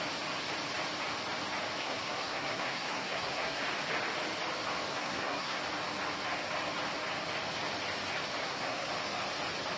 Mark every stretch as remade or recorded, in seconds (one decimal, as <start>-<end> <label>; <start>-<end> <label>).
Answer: 0.0-1.8 recorded; 1.8-3.6 remade; 3.6-4.9 recorded; 4.9-5.6 remade; 5.6-8.4 recorded; 8.4-8.9 remade; 8.9-9.8 recorded